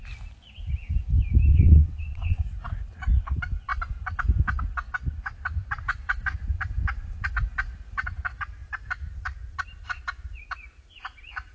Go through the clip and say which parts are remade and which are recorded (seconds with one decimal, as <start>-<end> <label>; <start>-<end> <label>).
0.0-1.5 recorded; 1.5-2.4 remade; 2.4-11.5 recorded

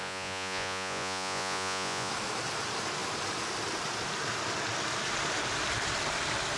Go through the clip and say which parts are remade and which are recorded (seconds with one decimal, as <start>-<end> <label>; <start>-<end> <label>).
0.0-2.1 remade; 2.1-6.6 recorded